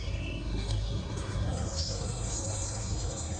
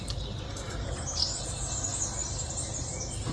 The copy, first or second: first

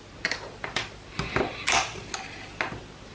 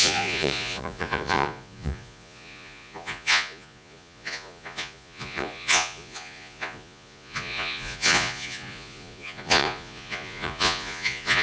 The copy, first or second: second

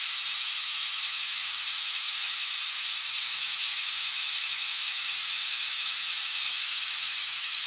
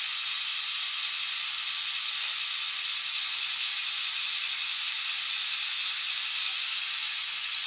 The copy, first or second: first